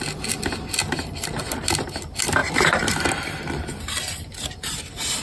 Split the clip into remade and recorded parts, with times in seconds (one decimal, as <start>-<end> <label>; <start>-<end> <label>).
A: 0.0-2.4 recorded; 2.4-3.4 remade; 3.4-5.2 recorded